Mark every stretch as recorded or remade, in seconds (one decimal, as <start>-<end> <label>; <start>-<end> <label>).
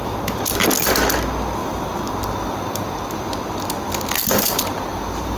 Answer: 0.0-1.6 recorded; 1.6-3.3 remade; 3.3-4.2 recorded; 4.2-5.4 remade